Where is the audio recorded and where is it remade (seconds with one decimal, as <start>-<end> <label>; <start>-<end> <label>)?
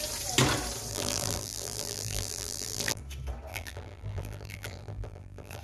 0.0-0.9 recorded; 0.9-3.0 remade; 3.0-3.5 recorded; 3.5-5.6 remade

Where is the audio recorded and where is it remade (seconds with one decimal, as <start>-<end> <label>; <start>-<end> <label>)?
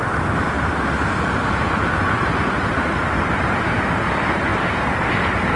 0.0-3.4 recorded; 3.4-5.6 remade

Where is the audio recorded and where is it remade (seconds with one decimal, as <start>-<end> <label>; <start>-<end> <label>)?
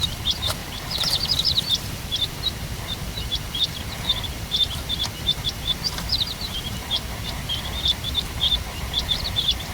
0.0-9.7 remade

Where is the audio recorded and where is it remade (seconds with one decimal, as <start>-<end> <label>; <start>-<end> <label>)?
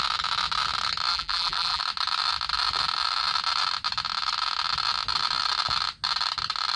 0.0-1.1 recorded; 1.1-1.8 remade; 1.8-6.8 recorded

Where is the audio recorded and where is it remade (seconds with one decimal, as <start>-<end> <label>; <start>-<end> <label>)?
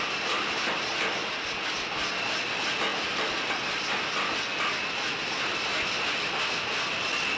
0.0-7.4 recorded